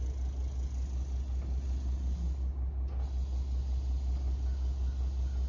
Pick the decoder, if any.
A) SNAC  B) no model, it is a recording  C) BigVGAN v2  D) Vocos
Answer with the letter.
B